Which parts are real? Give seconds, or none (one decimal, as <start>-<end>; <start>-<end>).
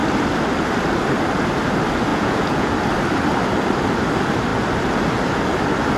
0.0-2.1; 2.7-6.0